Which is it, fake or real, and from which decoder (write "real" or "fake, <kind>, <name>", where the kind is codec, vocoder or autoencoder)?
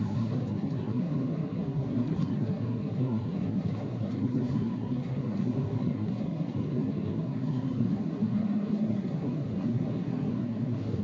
fake, codec, SNAC